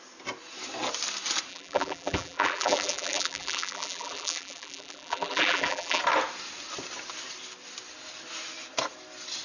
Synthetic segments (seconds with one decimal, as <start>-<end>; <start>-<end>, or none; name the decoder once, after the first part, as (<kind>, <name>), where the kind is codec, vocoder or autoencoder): 1.5-6.0 (vocoder, BigVGAN v2)

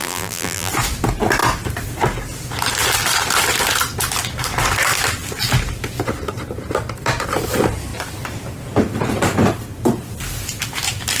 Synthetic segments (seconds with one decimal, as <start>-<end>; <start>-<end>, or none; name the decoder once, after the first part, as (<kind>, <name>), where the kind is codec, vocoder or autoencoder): 0.0-0.7 (vocoder, BigVGAN v2)